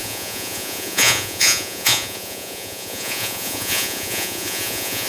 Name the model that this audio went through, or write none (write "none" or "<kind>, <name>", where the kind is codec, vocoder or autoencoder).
vocoder, Vocos